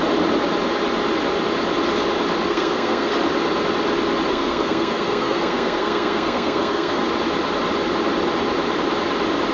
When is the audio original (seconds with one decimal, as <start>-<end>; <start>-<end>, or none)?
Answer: 0.0-2.5; 3.1-4.3; 7.0-9.5